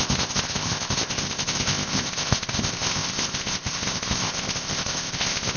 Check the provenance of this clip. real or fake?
fake